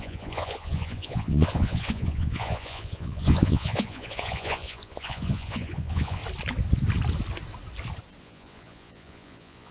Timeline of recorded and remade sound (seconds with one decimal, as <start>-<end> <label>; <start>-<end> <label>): 0.0-6.2 remade; 6.2-8.2 recorded; 8.2-9.7 remade